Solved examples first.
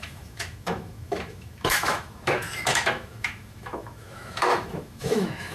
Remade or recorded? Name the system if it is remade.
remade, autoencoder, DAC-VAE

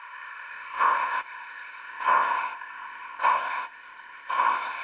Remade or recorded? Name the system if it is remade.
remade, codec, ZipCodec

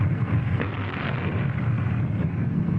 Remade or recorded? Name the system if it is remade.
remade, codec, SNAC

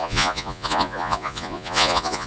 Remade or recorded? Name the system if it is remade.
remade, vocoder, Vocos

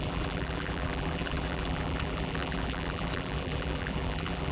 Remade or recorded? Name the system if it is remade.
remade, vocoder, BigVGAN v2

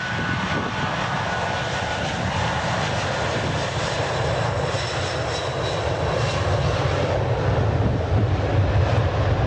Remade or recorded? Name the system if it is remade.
recorded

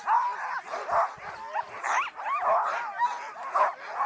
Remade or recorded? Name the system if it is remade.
recorded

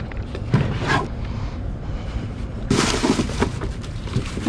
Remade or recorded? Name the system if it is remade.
remade, vocoder, BigVGAN v2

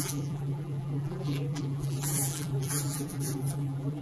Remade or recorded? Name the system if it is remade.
remade, vocoder, BigVGAN v2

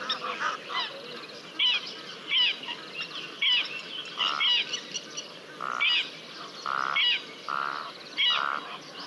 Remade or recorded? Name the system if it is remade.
recorded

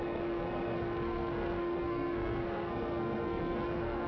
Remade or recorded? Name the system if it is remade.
remade, codec, SNAC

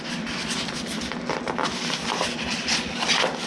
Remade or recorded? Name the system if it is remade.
recorded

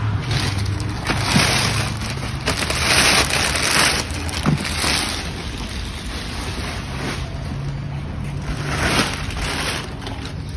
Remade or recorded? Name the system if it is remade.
recorded